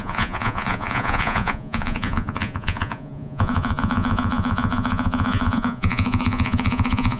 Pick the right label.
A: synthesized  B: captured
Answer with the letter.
A